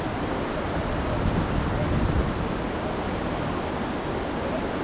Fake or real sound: real